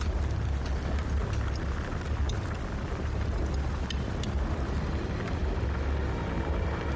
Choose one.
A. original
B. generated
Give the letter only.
A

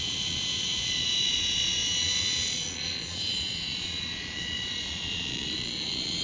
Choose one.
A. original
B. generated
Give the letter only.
B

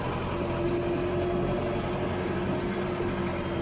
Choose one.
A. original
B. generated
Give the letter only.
A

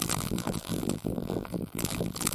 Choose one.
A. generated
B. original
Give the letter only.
A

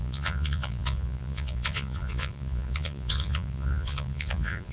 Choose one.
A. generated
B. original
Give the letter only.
A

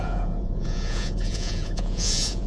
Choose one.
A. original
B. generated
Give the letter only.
B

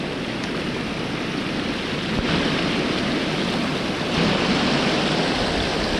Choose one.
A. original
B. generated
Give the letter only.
A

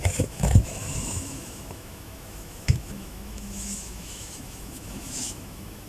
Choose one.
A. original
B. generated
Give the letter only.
B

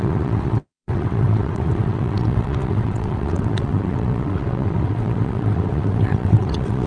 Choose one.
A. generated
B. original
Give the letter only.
A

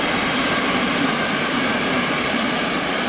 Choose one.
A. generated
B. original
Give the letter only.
A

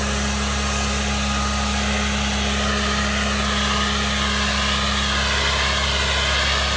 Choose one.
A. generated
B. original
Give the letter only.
B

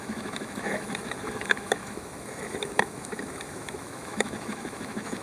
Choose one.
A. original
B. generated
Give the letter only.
B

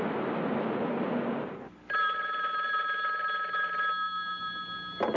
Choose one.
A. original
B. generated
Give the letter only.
A